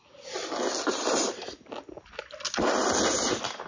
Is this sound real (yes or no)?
yes